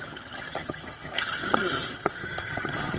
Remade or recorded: remade